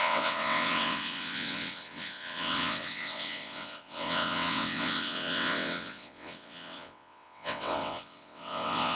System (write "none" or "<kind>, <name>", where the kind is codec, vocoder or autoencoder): vocoder, WaveNeXt